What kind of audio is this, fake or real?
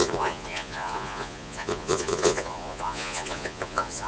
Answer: fake